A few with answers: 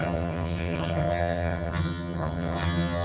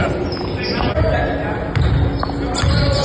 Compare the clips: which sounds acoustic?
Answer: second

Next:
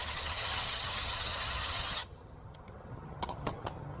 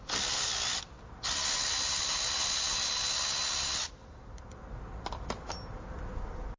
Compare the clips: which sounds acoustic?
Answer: second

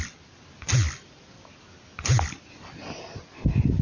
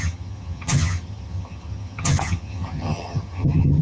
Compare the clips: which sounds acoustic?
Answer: first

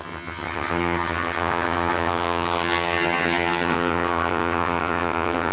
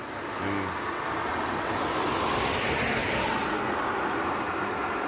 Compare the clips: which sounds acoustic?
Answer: second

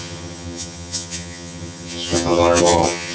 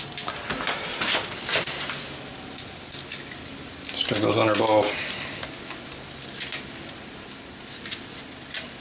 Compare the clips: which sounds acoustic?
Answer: second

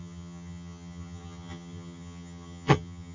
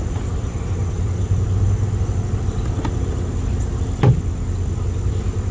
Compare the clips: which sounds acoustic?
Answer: second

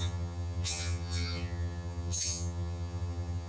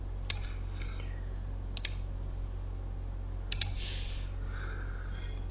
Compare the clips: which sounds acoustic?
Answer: second